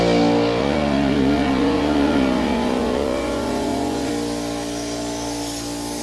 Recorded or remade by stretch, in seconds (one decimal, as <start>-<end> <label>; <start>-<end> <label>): 0.0-0.6 recorded; 0.6-4.1 remade; 4.1-6.0 recorded

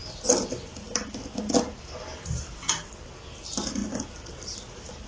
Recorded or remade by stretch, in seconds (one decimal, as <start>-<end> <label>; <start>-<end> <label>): 0.0-5.1 recorded

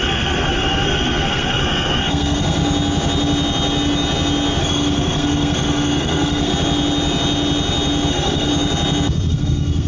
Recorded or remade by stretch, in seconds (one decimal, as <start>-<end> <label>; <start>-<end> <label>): 0.0-2.6 remade; 2.6-4.6 recorded; 4.6-6.5 remade; 6.5-8.1 recorded; 8.1-8.5 remade; 8.5-9.3 recorded; 9.3-9.9 remade

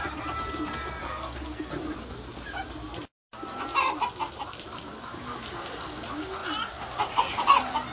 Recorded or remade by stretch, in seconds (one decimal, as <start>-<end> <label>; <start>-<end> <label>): 0.0-1.0 recorded; 1.0-1.7 remade; 1.7-7.9 recorded

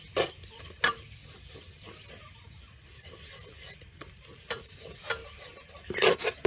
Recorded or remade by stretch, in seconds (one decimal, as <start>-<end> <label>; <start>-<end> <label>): 0.0-6.5 recorded